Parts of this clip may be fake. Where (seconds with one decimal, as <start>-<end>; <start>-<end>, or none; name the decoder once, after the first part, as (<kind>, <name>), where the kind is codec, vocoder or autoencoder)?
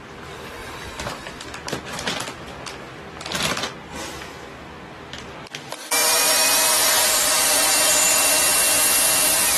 0.6-2.1 (vocoder, BigVGAN v2); 6.0-7.7